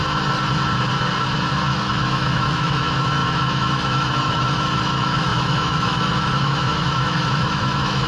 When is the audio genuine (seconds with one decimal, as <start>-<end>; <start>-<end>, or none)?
0.0-1.8